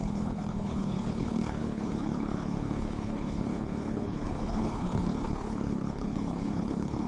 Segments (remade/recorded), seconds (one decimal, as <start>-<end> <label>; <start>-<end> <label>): 0.0-7.1 remade

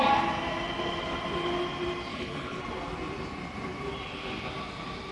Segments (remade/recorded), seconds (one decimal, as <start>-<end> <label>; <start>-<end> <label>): 0.0-2.1 recorded; 2.1-2.6 remade; 2.6-5.1 recorded

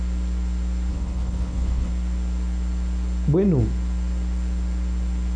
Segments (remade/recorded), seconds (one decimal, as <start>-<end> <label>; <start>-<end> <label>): 0.0-0.9 recorded; 0.9-1.9 remade; 1.9-5.4 recorded